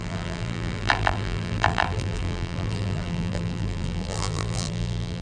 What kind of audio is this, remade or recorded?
remade